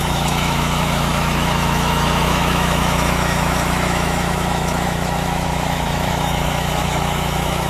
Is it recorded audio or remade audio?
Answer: remade